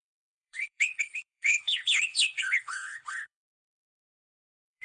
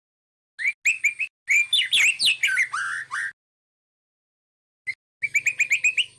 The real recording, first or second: second